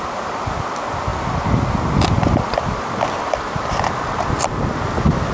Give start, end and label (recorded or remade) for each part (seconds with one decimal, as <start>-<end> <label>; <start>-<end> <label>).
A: 0.0-5.3 recorded